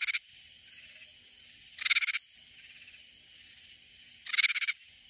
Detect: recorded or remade recorded